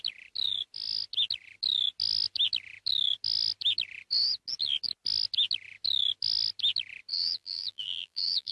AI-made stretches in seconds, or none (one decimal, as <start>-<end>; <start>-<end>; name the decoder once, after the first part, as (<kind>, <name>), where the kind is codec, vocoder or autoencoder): 7.1-8.5 (vocoder, BigVGAN v2)